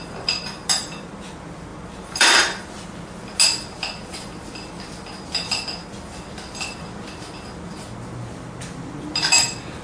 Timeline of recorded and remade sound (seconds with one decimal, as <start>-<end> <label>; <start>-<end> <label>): 0.0-9.8 recorded